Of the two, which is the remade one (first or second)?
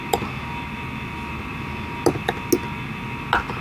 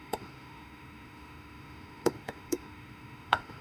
second